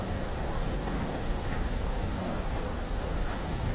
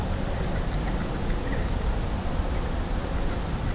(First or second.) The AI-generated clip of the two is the first